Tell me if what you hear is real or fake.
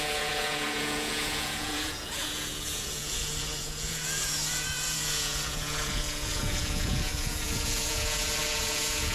fake